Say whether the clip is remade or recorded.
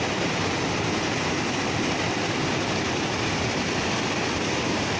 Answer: recorded